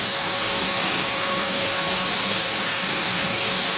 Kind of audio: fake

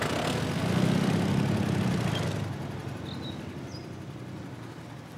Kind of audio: real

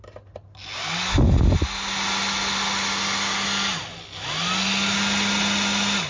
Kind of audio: real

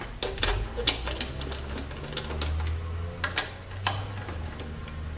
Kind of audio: real